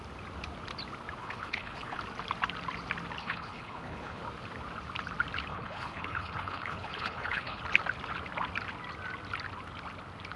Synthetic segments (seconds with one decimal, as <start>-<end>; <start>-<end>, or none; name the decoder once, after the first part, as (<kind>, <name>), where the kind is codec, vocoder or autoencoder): 1.2-2.0 (codec, HILCodec); 3.2-4.2; 5.5-7.6